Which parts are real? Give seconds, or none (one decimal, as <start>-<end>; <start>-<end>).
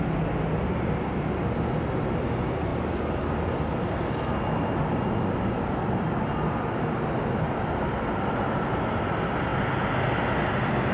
0.0-10.9